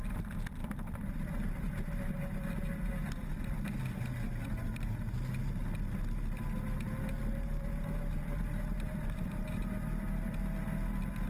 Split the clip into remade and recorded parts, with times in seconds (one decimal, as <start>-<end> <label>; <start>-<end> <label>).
0.0-0.6 recorded; 0.6-2.9 remade; 2.9-7.2 recorded; 7.2-9.6 remade; 9.6-11.3 recorded